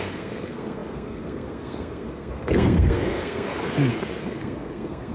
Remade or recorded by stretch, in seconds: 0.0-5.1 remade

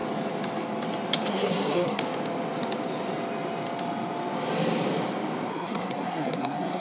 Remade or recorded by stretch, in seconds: 0.0-1.3 recorded; 1.3-2.0 remade; 2.0-5.5 recorded; 5.5-6.8 remade

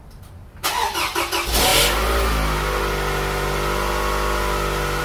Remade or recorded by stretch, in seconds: 0.0-5.0 recorded